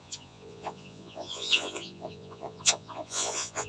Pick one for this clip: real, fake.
fake